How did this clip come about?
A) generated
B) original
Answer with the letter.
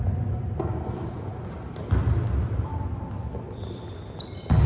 B